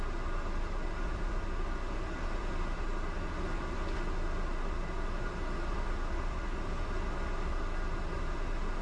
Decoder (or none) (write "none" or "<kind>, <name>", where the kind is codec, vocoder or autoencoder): none